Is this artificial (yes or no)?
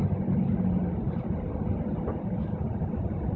no